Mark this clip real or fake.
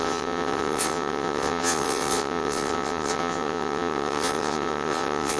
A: fake